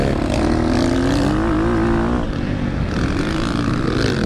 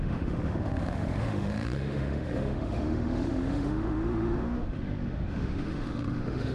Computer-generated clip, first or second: second